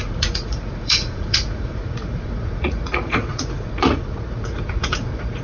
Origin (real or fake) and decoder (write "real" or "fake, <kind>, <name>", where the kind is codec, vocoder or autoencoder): fake, vocoder, Vocos